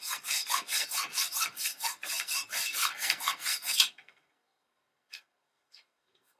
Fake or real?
fake